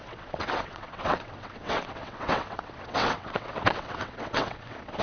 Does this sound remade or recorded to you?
remade